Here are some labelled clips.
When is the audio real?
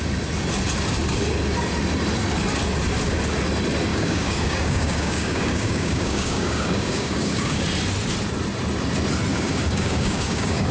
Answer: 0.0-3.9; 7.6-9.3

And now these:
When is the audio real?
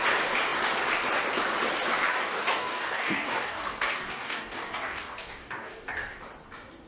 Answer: 0.0-2.1; 6.2-6.9